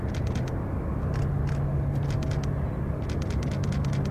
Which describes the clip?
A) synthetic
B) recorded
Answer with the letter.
B